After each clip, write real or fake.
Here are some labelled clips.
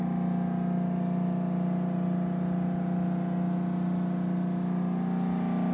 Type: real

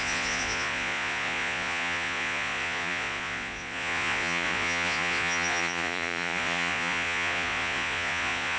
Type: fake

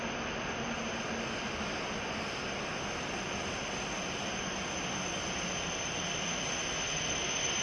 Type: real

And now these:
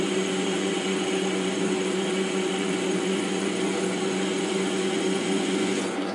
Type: fake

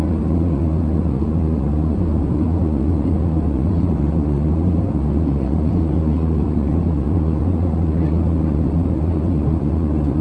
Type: fake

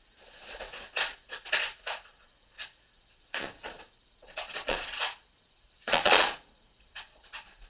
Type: fake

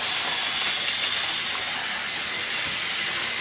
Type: real